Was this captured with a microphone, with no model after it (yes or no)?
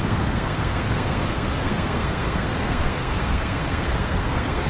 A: no